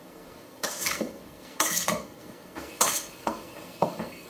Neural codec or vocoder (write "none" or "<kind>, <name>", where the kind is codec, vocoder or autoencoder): codec, SNAC